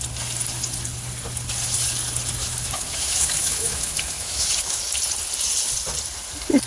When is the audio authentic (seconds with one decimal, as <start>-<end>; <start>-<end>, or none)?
0.0-2.4; 4.8-6.7